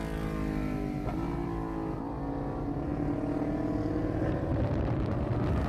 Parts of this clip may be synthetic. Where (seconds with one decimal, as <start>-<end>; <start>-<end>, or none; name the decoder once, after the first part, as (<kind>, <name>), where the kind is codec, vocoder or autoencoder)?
none